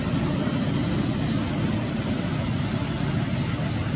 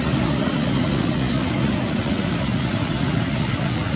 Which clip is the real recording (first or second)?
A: first